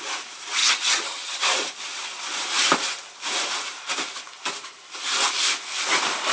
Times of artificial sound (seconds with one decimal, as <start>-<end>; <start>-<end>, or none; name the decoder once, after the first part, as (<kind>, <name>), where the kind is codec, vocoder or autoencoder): 0.6-1.4 (vocoder, HiFi-GAN)